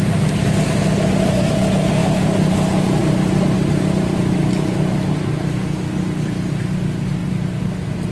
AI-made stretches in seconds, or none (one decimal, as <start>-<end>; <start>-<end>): none